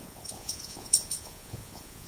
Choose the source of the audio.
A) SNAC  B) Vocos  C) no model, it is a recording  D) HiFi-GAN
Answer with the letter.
B